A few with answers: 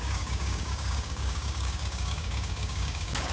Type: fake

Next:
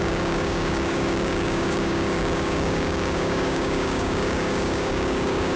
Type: fake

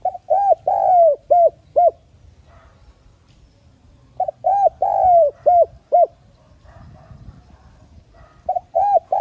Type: real